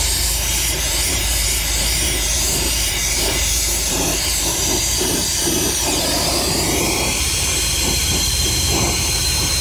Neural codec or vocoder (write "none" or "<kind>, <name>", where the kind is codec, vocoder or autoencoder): vocoder, BigVGAN v2